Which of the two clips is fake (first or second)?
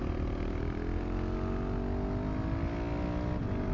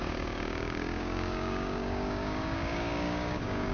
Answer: second